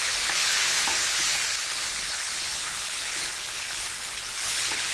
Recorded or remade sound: remade